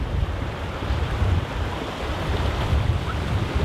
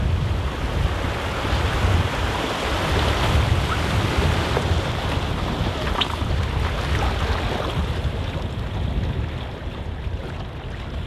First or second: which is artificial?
first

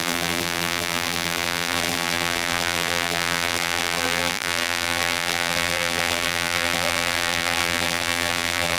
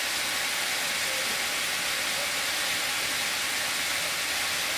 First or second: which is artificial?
first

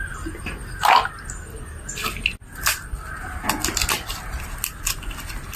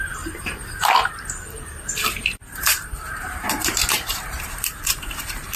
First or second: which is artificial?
second